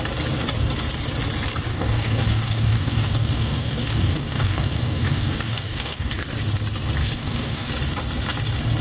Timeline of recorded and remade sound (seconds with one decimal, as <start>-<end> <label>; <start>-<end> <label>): 0.0-1.7 recorded; 1.7-6.1 remade; 6.1-7.0 recorded; 7.0-7.7 remade; 7.7-8.8 recorded

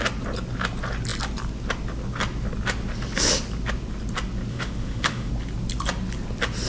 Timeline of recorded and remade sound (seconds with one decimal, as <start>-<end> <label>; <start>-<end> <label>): 0.0-4.5 recorded; 4.5-5.3 remade; 5.3-6.7 recorded

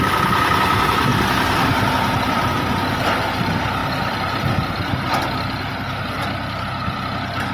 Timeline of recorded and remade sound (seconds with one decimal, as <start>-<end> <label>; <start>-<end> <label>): 0.0-3.8 recorded; 3.8-6.1 remade; 6.1-7.5 recorded

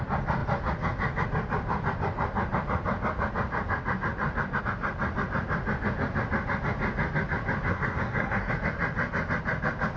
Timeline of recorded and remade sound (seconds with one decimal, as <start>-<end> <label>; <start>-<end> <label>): 0.0-7.7 recorded; 7.7-8.5 remade; 8.5-10.0 recorded

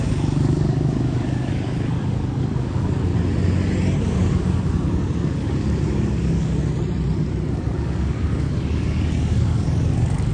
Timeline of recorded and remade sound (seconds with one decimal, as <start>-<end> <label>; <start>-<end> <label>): 0.0-3.1 remade; 3.1-4.0 recorded; 4.0-6.6 remade; 6.6-7.5 recorded; 7.5-10.3 remade

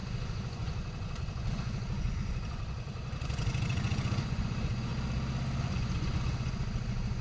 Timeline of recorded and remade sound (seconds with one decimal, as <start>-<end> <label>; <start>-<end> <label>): 0.0-4.9 remade; 4.9-5.6 recorded; 5.6-7.2 remade